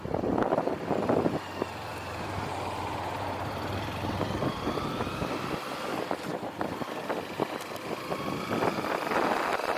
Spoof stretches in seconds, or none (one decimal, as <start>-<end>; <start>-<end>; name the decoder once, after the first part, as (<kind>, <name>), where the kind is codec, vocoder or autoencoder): none